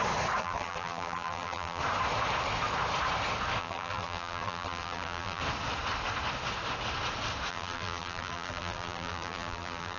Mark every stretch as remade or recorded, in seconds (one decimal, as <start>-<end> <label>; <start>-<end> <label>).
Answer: 0.0-0.4 recorded; 0.4-1.8 remade; 1.8-3.6 recorded; 3.6-5.4 remade; 5.4-7.5 recorded; 7.5-10.0 remade